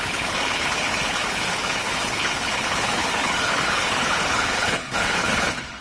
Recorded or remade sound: remade